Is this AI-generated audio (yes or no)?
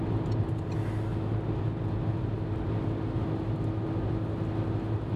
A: no